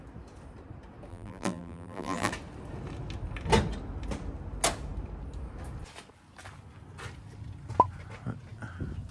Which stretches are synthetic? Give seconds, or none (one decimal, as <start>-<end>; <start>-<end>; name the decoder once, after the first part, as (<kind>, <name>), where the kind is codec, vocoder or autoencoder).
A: 1.1-2.3 (vocoder, BigVGAN v2)

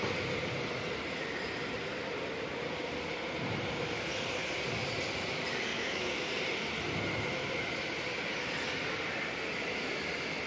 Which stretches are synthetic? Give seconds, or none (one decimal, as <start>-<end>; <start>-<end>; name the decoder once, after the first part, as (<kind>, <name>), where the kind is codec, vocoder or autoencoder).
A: 5.7-6.3 (autoencoder, DAC-VAE)

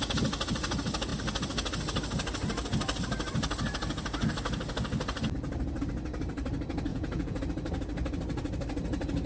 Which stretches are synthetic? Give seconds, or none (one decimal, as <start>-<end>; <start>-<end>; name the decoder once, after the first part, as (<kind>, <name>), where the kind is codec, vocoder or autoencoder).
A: 6.9-7.4 (vocoder, Vocos)

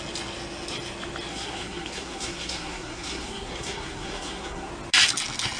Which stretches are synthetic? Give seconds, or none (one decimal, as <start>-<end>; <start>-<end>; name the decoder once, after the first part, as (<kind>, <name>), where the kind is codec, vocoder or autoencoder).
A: 1.3-4.7 (codec, SNAC)

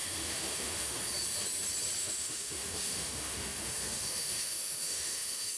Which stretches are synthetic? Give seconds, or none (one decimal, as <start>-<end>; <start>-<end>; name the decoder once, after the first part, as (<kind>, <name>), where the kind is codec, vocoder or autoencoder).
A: 0.0-1.0 (autoencoder, DAC-VAE); 2.0-5.6

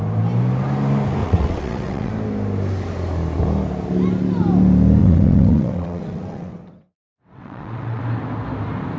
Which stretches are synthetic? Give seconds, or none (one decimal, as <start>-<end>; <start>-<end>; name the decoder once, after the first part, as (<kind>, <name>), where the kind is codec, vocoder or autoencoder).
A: 1.2-2.1 (vocoder, WaveNeXt); 5.0-8.0